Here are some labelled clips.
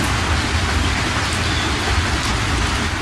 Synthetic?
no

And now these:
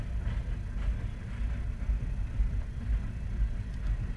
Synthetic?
no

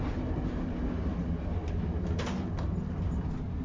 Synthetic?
no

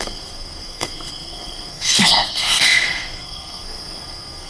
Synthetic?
yes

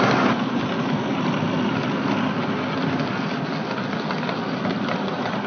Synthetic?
no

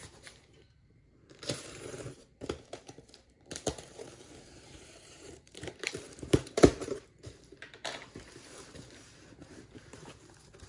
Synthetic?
yes